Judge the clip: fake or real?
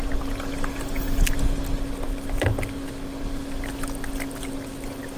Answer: real